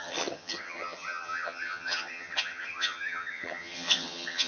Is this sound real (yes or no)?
no